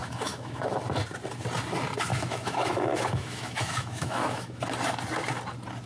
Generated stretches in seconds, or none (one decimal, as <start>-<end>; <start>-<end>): 0.0-0.6; 2.1-4.6